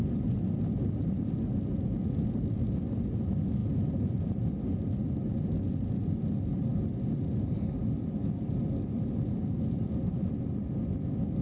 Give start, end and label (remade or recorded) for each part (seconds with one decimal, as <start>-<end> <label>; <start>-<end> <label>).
0.0-11.4 recorded